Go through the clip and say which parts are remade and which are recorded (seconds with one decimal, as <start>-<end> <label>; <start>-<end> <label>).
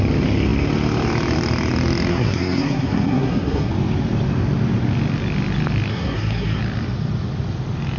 0.0-2.1 recorded; 2.1-3.7 remade; 3.7-5.9 recorded; 5.9-6.6 remade; 6.6-8.0 recorded